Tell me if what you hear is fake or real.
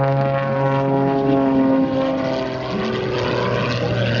real